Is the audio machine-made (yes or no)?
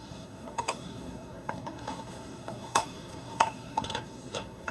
yes